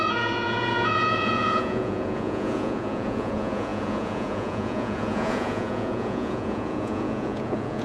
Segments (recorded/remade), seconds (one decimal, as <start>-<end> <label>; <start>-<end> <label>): 0.0-7.8 remade